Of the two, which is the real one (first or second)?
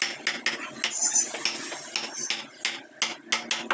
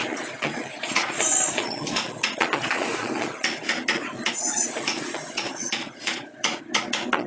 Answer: first